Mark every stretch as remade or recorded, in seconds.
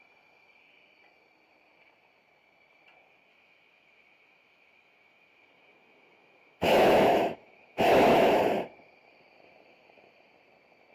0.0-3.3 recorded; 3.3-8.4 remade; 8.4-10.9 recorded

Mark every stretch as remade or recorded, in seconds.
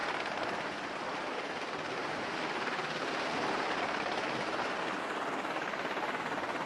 0.0-6.7 recorded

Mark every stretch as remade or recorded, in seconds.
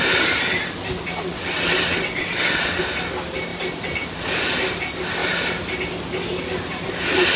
0.0-1.3 recorded; 1.3-2.8 remade; 2.8-7.4 recorded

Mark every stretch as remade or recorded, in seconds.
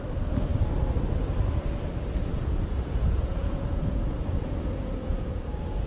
0.0-2.3 recorded; 2.3-5.9 remade